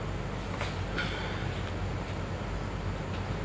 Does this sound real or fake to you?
real